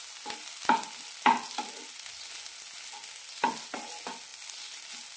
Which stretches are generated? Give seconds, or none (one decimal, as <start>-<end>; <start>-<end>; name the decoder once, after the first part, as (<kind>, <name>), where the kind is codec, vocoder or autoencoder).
none